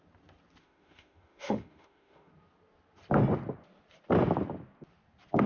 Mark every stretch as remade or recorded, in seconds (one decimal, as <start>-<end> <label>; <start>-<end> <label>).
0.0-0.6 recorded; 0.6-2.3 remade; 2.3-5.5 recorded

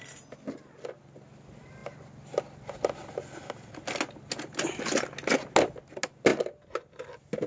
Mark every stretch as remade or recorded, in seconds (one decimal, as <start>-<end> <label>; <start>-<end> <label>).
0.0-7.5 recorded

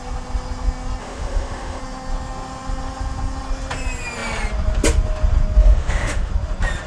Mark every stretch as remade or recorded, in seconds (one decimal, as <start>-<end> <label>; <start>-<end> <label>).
0.0-1.0 recorded; 1.0-1.8 remade; 1.8-5.6 recorded; 5.6-6.3 remade; 6.3-6.9 recorded